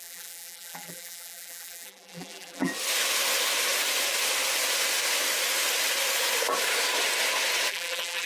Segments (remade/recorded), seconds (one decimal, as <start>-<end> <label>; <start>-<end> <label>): 0.0-2.7 remade; 2.7-7.7 recorded; 7.7-8.3 remade